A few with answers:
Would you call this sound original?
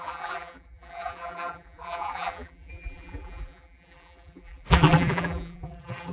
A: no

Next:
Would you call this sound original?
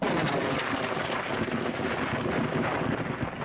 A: yes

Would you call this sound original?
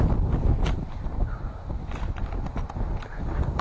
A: yes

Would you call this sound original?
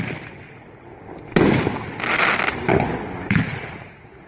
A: yes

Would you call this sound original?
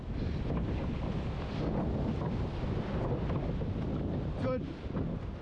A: yes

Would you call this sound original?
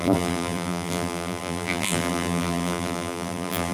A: no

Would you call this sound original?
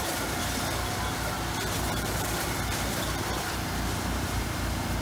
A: no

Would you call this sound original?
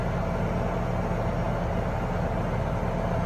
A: yes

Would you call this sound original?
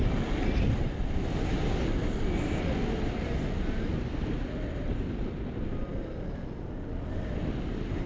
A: yes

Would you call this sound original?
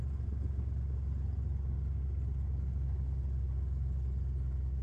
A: yes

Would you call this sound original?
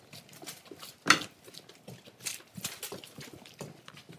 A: yes